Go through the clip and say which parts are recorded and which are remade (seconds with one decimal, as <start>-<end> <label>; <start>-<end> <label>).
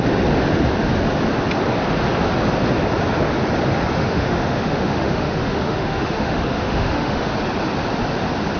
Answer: 0.0-3.9 recorded; 3.9-7.3 remade; 7.3-8.6 recorded